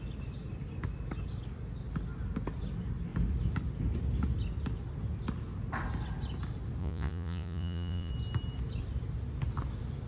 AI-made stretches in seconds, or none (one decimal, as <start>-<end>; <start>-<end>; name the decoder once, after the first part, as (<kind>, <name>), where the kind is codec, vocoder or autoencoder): 6.8-8.1 (vocoder, Vocos)